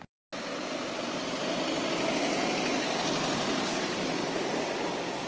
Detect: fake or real real